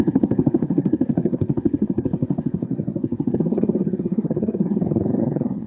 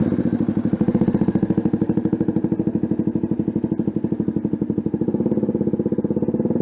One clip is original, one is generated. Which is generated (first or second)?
first